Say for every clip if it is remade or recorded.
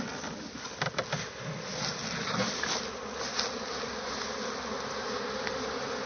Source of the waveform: recorded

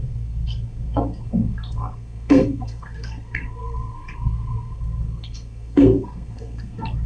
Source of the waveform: remade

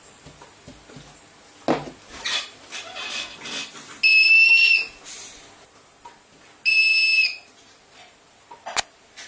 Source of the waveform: recorded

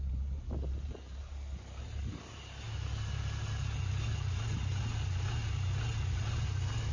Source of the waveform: recorded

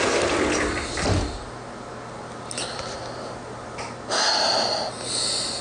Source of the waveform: recorded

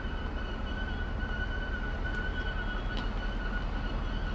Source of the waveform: recorded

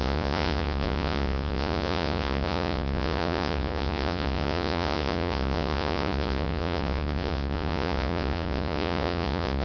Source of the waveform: remade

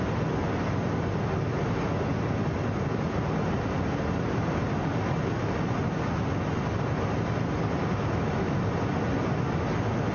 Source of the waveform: recorded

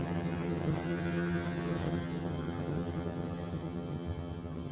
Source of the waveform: remade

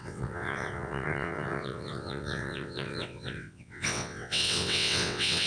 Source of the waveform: remade